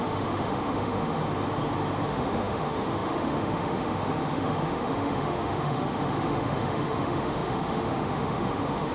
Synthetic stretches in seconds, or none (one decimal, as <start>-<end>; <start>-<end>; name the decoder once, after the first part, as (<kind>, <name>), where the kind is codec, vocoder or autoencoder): 0.0-1.2 (autoencoder, DAC-VAE); 2.1-8.9